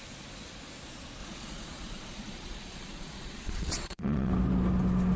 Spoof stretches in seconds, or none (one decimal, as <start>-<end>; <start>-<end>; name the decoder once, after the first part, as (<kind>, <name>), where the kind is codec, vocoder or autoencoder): 1.2-4.3 (vocoder, Vocos)